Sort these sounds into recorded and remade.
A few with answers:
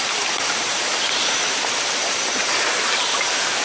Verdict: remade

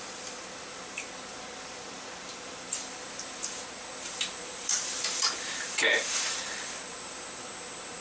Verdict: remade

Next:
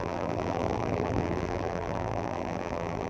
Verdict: remade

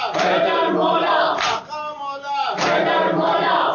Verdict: remade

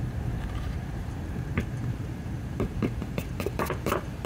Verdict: remade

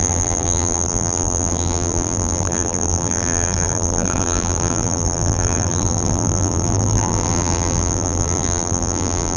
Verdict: remade